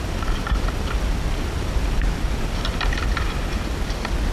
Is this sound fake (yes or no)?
no